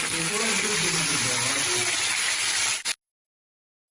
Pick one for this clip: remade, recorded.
recorded